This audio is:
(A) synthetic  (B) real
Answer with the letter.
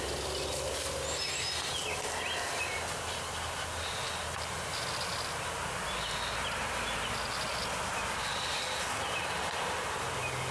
B